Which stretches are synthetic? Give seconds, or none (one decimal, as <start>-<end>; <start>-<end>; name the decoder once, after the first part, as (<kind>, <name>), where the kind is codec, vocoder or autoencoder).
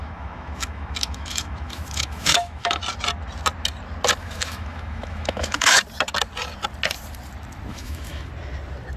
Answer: 0.0-2.8 (autoencoder, DAC-VAE); 4.2-5.8; 7.7-8.3